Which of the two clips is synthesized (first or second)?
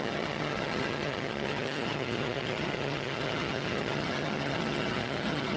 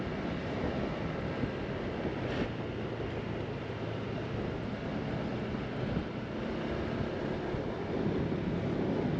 first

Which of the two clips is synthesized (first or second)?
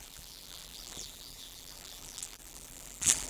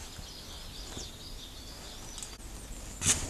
first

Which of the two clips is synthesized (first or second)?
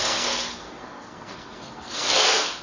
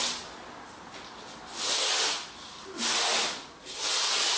first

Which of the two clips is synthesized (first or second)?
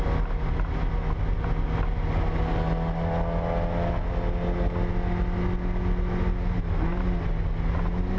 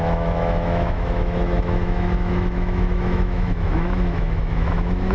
second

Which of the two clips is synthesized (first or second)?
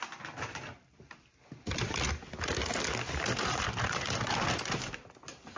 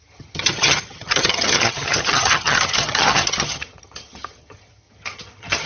second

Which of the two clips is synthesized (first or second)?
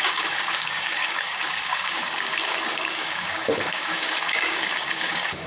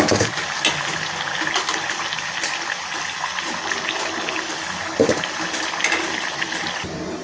first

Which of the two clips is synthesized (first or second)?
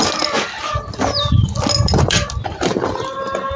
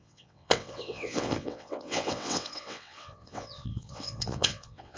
second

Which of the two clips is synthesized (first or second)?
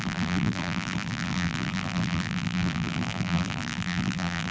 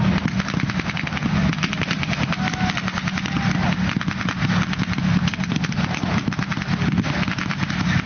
first